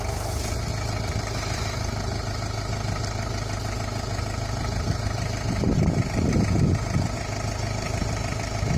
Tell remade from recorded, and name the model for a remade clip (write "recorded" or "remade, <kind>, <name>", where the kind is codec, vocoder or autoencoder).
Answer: recorded